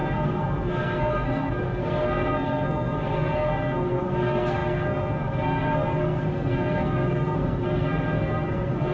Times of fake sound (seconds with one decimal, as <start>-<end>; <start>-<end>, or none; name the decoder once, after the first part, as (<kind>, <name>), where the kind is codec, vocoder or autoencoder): 0.0-8.9 (codec, SNAC)